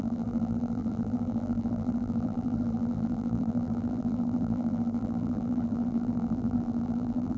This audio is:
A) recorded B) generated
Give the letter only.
B